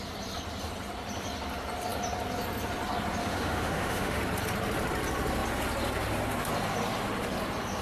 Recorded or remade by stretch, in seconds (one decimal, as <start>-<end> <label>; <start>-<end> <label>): 0.0-3.2 recorded; 3.2-4.2 remade; 4.2-7.8 recorded